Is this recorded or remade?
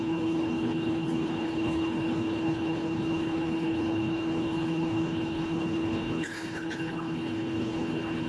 remade